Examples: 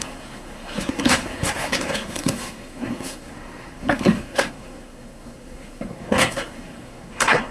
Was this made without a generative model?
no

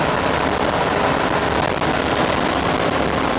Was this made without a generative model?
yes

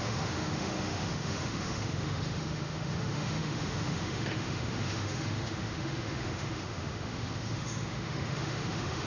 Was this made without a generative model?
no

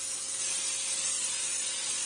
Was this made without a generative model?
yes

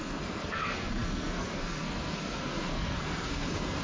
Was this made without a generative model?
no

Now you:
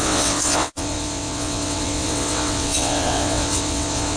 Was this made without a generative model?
no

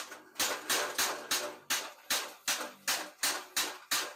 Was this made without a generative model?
yes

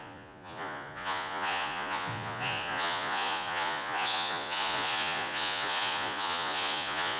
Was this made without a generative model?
no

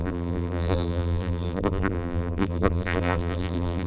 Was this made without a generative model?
no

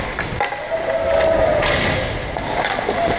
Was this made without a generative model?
yes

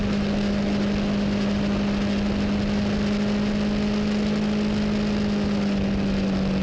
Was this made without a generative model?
yes